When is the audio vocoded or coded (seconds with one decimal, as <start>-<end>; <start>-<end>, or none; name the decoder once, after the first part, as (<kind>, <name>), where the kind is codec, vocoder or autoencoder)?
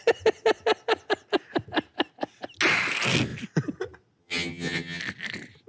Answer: 4.2-5.0 (vocoder, HiFi-GAN)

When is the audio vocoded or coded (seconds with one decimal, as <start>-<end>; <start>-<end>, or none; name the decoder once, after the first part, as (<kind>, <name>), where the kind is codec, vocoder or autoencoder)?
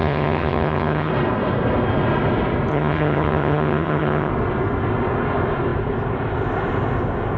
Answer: 0.0-1.1 (vocoder, HiFi-GAN); 2.7-4.3